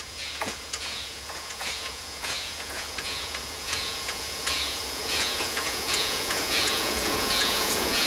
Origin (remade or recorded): remade